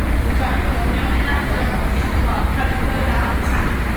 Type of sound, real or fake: real